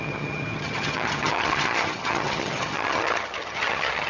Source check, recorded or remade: remade